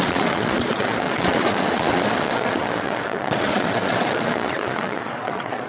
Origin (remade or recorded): remade